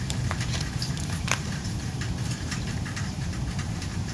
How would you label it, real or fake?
fake